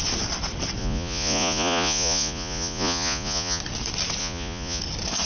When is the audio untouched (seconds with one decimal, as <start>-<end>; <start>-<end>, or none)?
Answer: 0.0-0.8; 3.6-4.2; 4.8-5.3